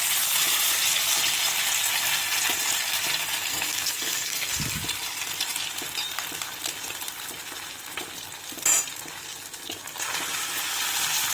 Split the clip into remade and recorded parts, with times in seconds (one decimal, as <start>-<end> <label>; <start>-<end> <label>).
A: 0.0-3.4 recorded; 3.4-4.5 remade; 4.5-11.3 recorded